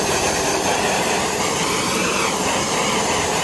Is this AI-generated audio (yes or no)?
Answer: yes